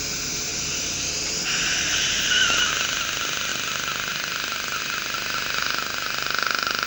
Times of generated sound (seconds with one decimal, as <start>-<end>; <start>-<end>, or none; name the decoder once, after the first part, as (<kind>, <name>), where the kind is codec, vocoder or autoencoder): 0.5-2.7 (vocoder, BigVGAN v2)